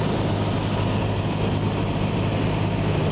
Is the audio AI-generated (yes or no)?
no